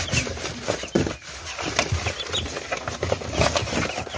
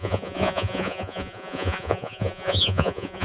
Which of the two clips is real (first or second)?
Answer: first